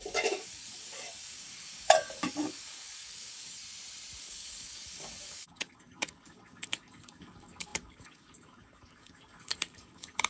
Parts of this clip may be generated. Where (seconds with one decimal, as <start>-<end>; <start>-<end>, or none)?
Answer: 0.0-3.6; 4.2-10.3